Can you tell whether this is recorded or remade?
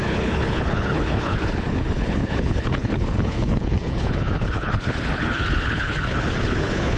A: remade